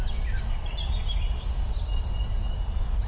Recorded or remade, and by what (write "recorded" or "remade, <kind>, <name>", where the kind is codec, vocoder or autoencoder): recorded